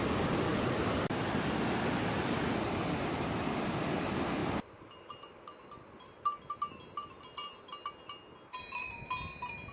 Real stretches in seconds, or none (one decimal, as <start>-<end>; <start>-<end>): 0.0-0.5; 1.3-9.7